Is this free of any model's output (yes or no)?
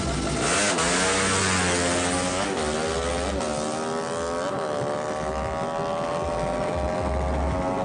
yes